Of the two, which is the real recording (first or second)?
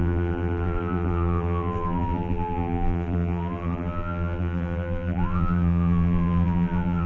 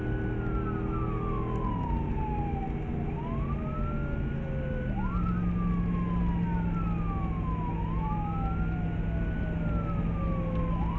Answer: second